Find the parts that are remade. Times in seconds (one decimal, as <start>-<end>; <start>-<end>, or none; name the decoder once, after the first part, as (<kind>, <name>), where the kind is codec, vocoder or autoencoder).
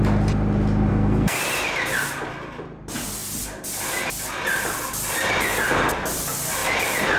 0.9-1.4 (codec, SNAC)